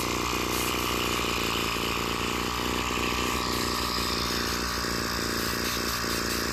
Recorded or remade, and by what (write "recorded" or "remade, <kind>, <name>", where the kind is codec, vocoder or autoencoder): recorded